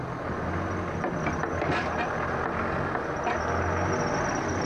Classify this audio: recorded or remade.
recorded